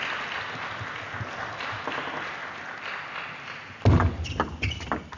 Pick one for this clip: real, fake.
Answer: real